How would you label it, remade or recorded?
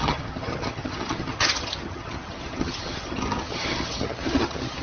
remade